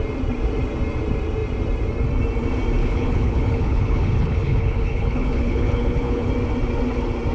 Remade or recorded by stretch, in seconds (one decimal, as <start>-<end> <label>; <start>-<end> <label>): 0.0-2.8 recorded; 2.8-6.3 remade; 6.3-7.3 recorded